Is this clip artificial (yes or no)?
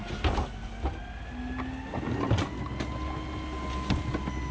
no